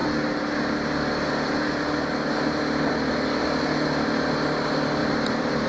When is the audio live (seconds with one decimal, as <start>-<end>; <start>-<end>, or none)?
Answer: 0.0-5.0